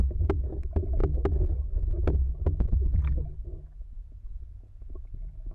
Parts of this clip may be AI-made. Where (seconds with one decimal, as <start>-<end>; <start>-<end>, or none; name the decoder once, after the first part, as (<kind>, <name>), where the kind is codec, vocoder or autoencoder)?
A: none